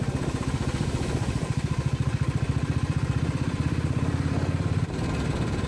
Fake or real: fake